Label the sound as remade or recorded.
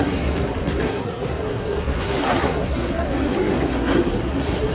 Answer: remade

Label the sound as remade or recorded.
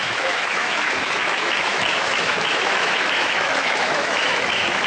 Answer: remade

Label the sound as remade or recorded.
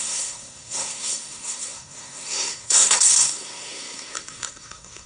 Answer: remade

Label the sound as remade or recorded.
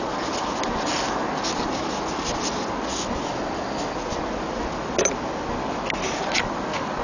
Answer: recorded